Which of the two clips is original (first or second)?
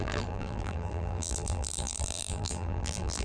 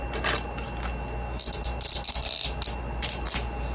second